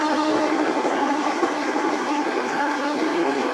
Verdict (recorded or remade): remade